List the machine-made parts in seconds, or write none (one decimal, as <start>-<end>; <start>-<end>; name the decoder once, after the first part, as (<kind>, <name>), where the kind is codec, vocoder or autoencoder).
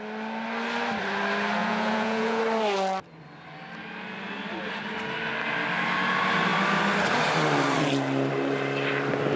1.6-2.4 (vocoder, Vocos)